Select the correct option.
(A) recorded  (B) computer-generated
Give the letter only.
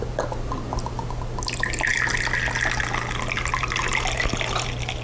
A